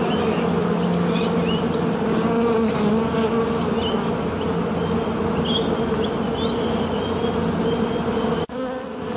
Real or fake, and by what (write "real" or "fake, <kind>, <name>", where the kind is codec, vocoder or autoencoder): real